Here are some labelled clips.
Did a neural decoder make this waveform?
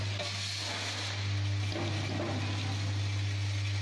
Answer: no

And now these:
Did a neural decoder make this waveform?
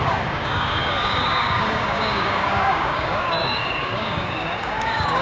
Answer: yes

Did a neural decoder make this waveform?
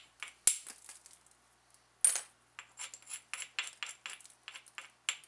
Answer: no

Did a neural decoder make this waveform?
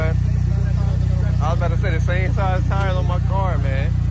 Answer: no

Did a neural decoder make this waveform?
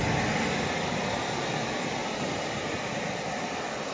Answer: no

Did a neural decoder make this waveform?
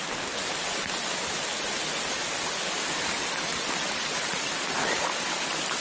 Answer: no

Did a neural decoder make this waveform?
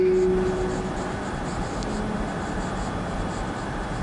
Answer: no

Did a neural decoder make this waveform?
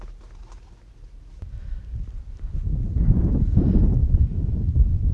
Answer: no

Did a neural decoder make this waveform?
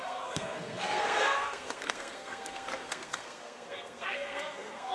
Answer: yes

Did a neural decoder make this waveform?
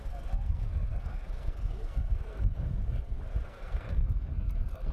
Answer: yes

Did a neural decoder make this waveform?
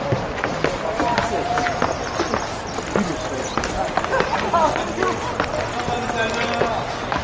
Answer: no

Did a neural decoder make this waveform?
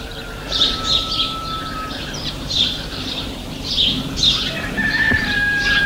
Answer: yes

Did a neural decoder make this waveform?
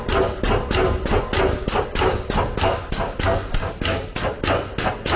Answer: no